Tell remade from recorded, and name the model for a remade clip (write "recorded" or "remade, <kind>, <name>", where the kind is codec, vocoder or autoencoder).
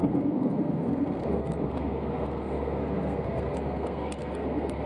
remade, codec, SNAC